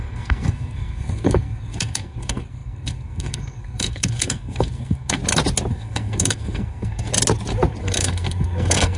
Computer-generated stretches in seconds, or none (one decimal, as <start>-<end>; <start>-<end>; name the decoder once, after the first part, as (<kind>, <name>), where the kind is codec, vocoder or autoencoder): 0.0-5.2 (codec, SNAC); 5.7-7.1; 7.8-9.0